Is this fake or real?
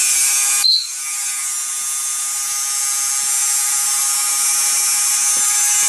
real